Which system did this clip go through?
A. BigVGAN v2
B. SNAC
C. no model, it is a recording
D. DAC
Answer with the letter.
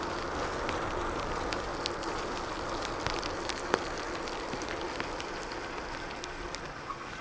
C